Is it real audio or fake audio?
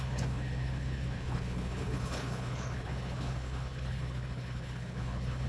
fake